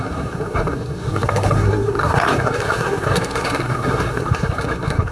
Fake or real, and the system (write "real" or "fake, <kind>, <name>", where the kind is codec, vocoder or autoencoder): fake, codec, SNAC